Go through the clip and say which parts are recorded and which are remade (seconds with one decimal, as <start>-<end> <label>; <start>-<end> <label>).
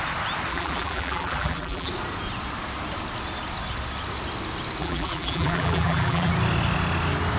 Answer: 0.0-0.5 recorded; 0.5-1.9 remade; 1.9-4.8 recorded; 4.8-6.3 remade; 6.3-7.4 recorded